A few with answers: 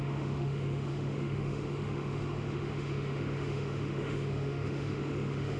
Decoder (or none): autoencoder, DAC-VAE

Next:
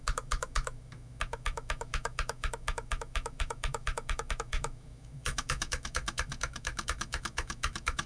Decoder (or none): autoencoder, DAC-VAE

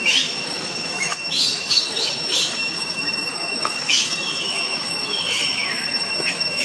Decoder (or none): autoencoder, DAC-VAE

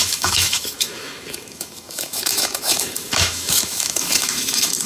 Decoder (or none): autoencoder, DAC-VAE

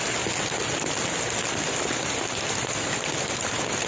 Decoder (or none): none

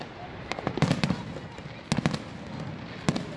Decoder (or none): none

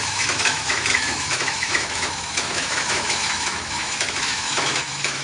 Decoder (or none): autoencoder, DAC-VAE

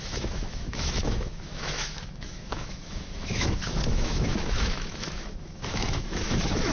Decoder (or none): autoencoder, DAC-VAE